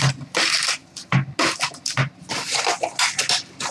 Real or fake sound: real